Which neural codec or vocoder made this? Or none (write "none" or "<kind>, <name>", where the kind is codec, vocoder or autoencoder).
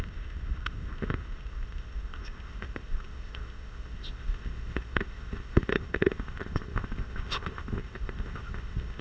codec, ZipCodec